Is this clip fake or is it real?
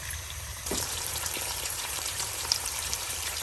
fake